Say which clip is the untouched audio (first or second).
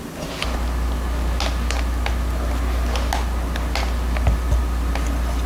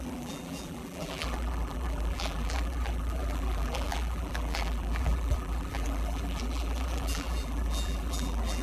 first